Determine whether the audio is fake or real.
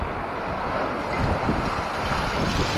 real